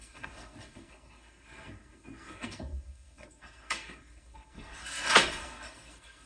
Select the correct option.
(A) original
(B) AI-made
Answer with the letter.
B